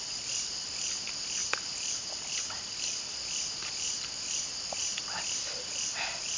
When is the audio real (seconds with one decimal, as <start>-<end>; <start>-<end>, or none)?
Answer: 0.0-6.4